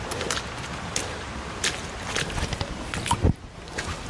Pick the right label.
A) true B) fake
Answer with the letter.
A